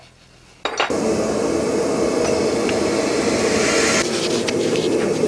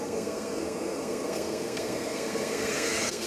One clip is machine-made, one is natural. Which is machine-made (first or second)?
second